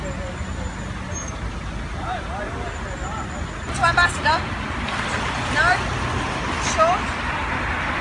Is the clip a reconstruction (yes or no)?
no